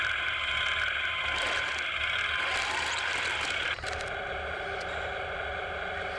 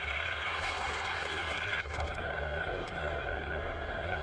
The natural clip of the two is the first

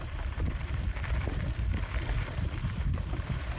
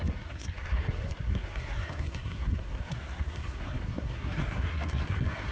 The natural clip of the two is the first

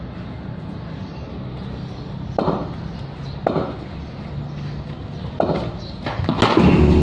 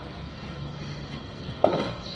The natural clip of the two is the first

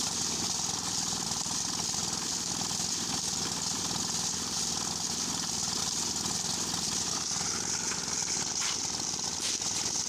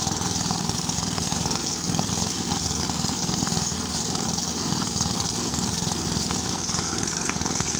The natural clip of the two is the first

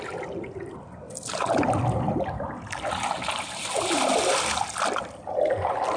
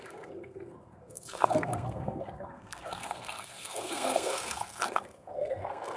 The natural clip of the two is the first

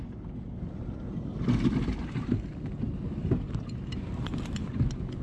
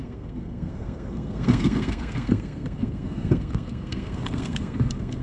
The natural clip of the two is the first